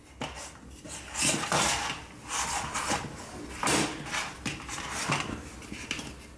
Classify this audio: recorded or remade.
recorded